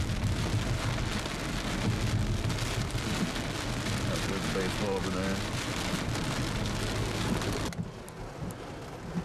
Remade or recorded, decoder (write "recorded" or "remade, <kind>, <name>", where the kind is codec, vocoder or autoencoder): recorded